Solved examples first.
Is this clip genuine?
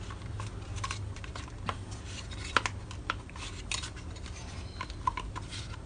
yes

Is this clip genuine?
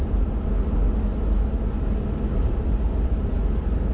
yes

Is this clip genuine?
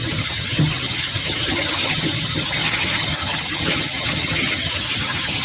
no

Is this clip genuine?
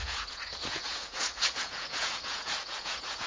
no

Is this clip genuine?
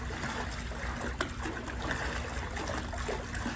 yes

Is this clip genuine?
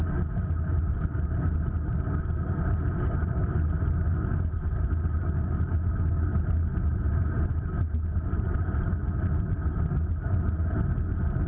yes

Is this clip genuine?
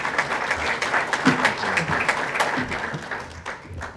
yes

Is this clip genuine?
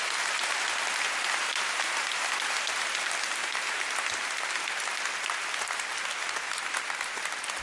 yes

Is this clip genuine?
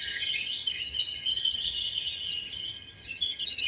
no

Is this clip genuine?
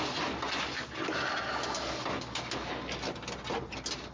yes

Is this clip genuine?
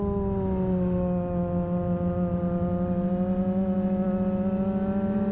yes